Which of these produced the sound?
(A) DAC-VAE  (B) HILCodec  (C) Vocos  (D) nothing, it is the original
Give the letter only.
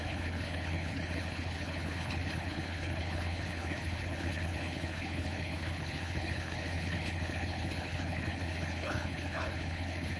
B